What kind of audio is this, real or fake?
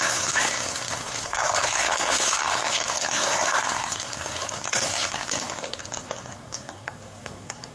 fake